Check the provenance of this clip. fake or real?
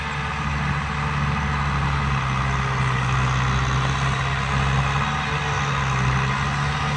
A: real